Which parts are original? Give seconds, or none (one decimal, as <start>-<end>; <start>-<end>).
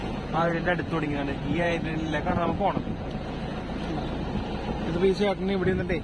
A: 3.6-6.0